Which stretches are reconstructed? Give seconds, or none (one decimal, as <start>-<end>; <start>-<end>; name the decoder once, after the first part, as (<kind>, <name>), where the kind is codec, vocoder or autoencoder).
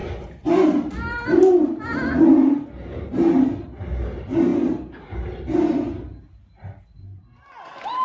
none